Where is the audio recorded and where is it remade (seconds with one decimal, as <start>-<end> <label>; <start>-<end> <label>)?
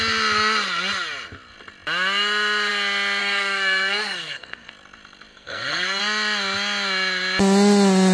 0.0-3.2 recorded; 3.2-4.7 remade; 4.7-5.3 recorded; 5.3-6.0 remade; 6.0-8.1 recorded